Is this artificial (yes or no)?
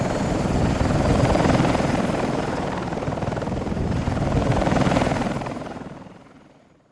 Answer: yes